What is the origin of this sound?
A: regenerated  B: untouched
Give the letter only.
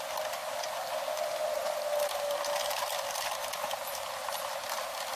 B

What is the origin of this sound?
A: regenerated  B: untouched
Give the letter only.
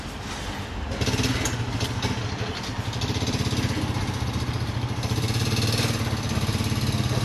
B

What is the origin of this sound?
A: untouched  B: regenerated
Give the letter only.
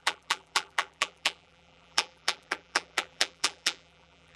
B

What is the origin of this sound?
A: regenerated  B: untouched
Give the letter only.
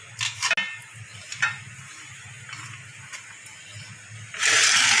B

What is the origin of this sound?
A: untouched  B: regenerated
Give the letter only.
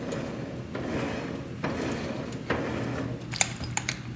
A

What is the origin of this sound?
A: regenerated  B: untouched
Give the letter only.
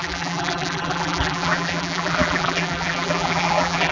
A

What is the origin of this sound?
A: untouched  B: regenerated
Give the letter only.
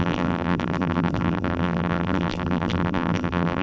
B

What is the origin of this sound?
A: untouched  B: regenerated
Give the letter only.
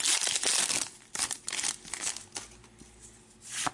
A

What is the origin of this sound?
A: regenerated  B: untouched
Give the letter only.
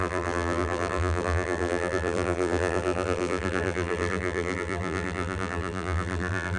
A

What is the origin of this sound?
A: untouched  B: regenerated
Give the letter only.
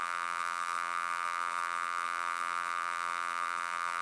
B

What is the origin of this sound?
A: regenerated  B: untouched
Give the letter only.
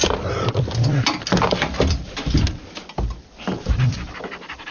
B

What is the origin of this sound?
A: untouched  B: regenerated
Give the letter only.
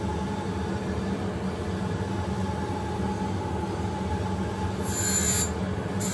A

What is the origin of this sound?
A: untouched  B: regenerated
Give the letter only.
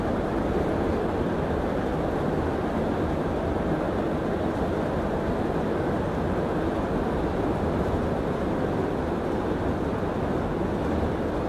A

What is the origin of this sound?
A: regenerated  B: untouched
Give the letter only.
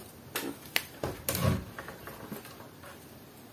B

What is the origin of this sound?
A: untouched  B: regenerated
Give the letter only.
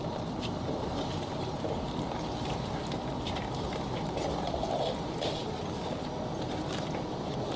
B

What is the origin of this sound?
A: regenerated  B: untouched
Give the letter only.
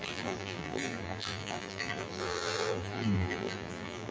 A